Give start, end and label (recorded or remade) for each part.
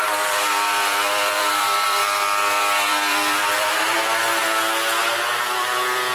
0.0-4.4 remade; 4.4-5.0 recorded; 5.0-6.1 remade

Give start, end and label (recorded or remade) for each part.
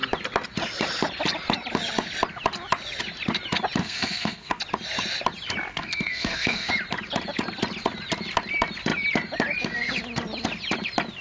0.0-3.8 recorded; 3.8-4.6 remade; 4.6-5.7 recorded; 5.7-6.7 remade; 6.7-11.2 recorded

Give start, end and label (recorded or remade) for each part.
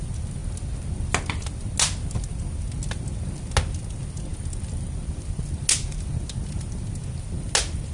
0.0-7.9 recorded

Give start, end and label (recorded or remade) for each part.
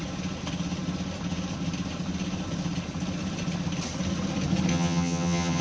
0.0-4.7 recorded; 4.7-5.6 remade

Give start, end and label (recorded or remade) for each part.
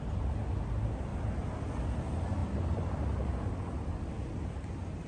0.0-5.1 recorded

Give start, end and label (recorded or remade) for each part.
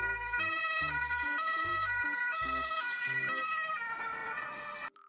0.0-0.6 recorded; 0.6-2.0 remade; 2.0-5.1 recorded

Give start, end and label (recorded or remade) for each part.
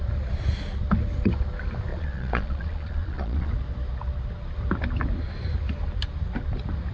0.0-1.9 recorded; 1.9-3.5 remade; 3.5-6.9 recorded